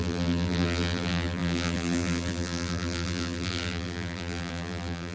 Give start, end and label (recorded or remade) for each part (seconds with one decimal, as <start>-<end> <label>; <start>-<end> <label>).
0.0-5.1 remade